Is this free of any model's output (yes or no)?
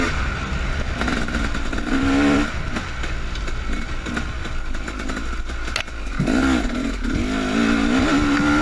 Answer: yes